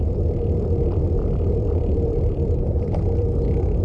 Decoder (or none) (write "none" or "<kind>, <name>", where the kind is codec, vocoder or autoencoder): vocoder, BigVGAN v2